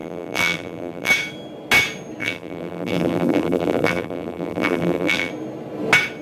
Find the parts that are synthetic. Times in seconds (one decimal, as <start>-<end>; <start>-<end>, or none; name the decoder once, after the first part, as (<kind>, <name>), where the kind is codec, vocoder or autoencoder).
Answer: 0.0-1.1 (vocoder, BigVGAN v2); 2.2-5.3